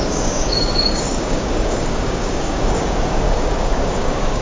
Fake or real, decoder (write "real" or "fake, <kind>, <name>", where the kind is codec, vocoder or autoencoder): fake, codec, DAC